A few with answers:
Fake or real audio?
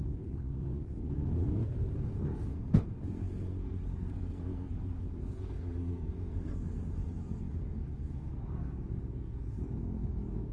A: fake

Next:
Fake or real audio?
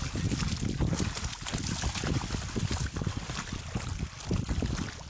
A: real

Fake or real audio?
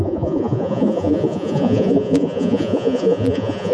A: fake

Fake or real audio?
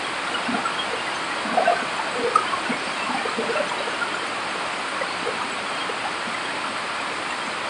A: real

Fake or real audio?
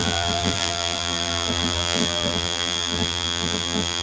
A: fake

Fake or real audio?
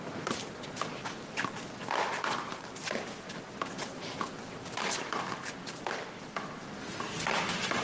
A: real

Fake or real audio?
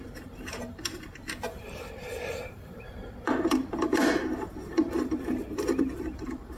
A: fake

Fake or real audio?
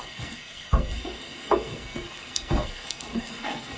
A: fake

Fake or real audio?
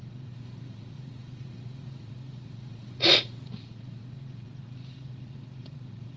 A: fake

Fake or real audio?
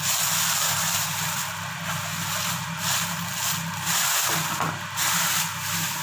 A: real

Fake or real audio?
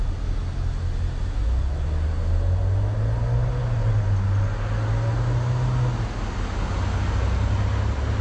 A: real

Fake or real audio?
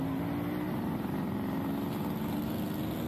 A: real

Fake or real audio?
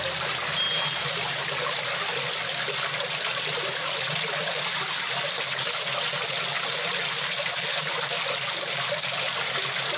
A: real